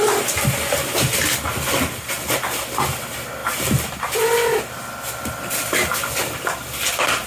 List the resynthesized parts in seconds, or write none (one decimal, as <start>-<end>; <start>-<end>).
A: none